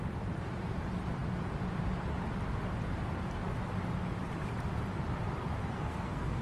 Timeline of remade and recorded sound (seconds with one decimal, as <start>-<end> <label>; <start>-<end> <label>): 0.0-5.6 recorded; 5.6-6.4 remade